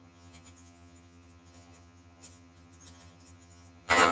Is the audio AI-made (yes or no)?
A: yes